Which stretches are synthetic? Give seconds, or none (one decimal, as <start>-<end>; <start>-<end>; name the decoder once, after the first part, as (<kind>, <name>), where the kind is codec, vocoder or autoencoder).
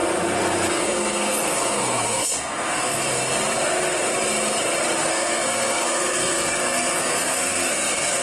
0.7-3.0 (codec, SNAC); 5.1-8.2